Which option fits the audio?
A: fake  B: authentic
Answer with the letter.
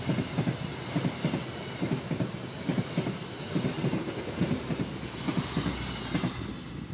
B